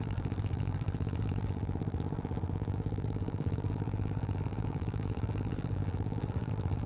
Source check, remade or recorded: remade